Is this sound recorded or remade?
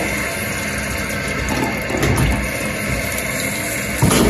recorded